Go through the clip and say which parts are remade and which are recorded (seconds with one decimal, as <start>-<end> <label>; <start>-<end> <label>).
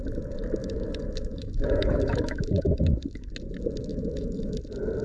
0.0-0.6 recorded; 0.6-3.3 remade; 3.3-3.9 recorded; 3.9-4.5 remade; 4.5-5.0 recorded